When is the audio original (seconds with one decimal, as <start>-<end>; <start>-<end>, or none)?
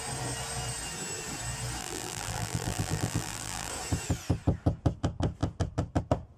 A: 0.0-1.8; 3.7-6.4